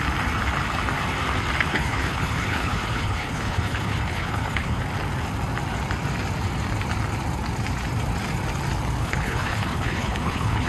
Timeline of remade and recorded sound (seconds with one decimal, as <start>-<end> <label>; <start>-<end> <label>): 0.0-1.7 recorded; 1.7-4.8 remade; 4.8-9.0 recorded; 9.0-10.7 remade